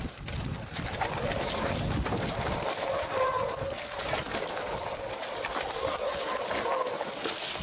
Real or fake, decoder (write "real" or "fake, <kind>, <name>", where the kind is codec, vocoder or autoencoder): real